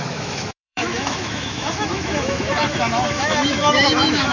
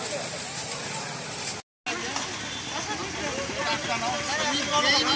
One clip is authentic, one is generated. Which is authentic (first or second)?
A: second